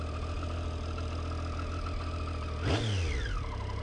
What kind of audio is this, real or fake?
real